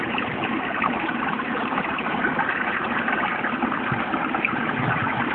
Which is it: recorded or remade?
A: recorded